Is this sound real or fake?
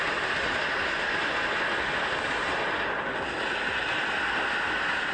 real